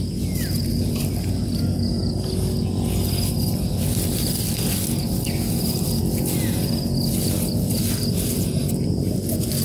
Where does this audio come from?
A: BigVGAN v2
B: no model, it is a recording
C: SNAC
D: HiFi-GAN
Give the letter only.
B